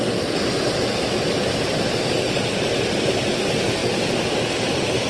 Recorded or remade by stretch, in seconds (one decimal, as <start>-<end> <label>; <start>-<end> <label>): 0.0-5.1 recorded